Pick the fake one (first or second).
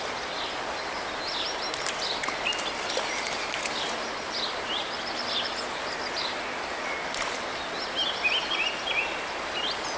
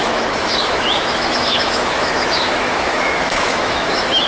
second